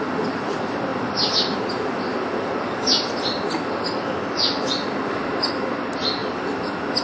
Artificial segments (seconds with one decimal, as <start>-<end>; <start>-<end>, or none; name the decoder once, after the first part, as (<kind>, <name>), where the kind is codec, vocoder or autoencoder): none

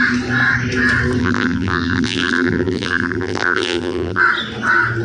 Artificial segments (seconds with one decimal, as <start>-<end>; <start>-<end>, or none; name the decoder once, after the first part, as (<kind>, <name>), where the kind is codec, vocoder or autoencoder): 1.2-4.2 (vocoder, BigVGAN v2)

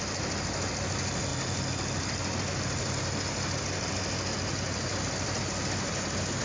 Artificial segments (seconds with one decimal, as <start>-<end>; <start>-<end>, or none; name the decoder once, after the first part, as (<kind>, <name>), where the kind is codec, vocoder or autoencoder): none

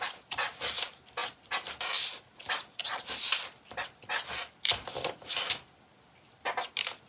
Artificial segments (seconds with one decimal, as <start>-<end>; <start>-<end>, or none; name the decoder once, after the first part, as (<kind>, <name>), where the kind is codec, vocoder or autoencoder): none

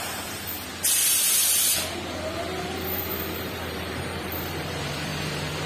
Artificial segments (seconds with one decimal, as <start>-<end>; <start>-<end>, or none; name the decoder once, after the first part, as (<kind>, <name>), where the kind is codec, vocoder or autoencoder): 0.0-0.7 (vocoder, BigVGAN v2); 3.0-5.7

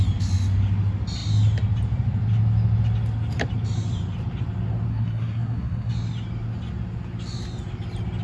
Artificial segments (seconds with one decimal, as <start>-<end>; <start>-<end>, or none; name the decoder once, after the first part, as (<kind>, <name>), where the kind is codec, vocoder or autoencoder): 4.9-5.9 (codec, SNAC)